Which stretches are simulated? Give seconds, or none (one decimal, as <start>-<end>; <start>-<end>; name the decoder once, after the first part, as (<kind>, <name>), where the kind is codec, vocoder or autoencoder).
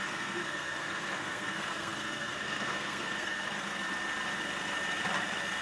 0.0-3.8 (codec, SNAC)